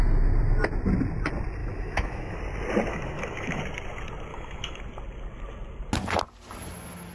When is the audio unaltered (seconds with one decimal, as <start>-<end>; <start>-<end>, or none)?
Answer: 0.0-1.6; 2.4-2.9; 3.6-4.3; 4.8-7.1